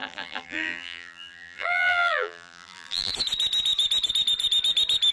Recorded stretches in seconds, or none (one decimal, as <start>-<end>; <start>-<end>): 3.1-5.1